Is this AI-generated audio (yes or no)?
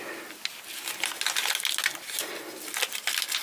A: no